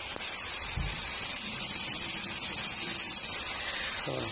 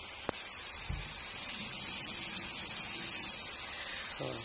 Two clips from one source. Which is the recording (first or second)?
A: second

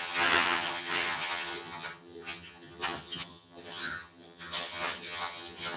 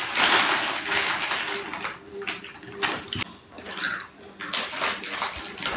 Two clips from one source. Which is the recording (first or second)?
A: second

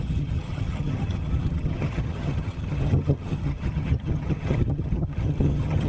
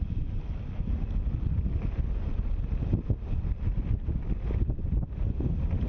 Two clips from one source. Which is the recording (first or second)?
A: second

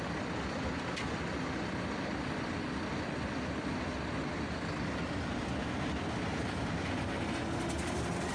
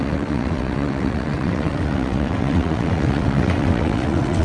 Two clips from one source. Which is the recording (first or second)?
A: first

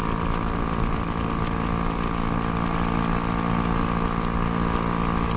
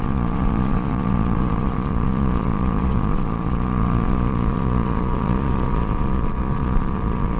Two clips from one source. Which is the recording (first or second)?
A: first